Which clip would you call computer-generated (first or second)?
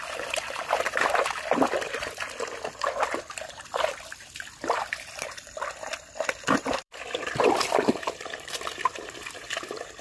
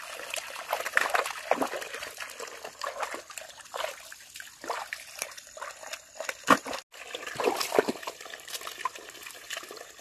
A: first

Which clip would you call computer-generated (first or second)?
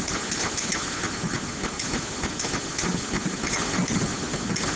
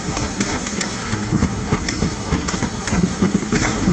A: second